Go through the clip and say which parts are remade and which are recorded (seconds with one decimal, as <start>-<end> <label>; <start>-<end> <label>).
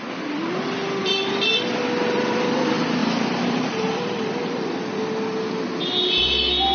0.0-1.0 recorded; 1.0-1.8 remade; 1.8-3.0 recorded; 3.0-4.8 remade; 4.8-6.7 recorded